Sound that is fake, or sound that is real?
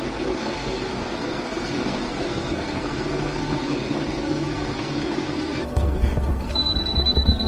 fake